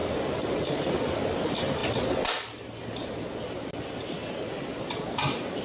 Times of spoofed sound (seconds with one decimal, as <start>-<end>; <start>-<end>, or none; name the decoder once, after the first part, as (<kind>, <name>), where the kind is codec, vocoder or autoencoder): none